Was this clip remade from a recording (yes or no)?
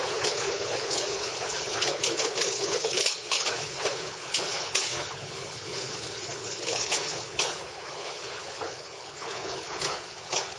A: yes